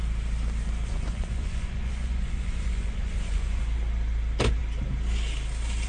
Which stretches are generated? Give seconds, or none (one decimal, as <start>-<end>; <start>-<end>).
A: 0.9-3.6